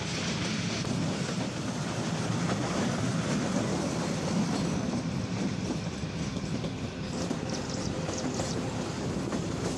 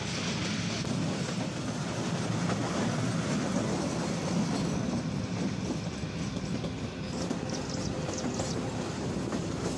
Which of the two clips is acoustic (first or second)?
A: second